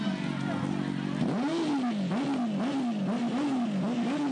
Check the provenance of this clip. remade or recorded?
recorded